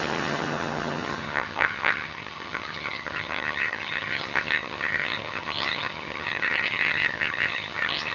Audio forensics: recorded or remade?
remade